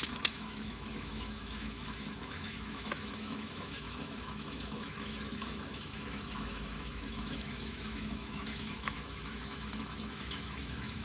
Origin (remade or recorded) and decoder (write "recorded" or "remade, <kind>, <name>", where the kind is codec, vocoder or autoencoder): remade, autoencoder, DAC-VAE